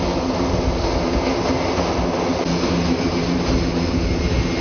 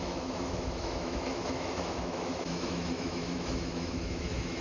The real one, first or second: first